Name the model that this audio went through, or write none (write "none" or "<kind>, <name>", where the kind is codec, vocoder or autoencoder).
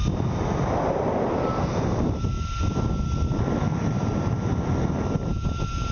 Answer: none